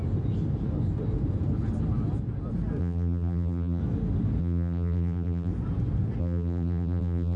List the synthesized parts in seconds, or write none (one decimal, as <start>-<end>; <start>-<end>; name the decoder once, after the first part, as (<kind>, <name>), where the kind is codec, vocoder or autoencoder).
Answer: 2.8-3.8 (vocoder, BigVGAN v2); 4.4-5.5; 6.2-7.4